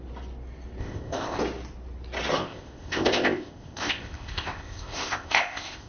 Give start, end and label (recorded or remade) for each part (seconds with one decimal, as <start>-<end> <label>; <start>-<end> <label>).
0.0-0.8 recorded; 0.8-1.4 remade; 1.4-2.4 recorded; 2.4-5.9 remade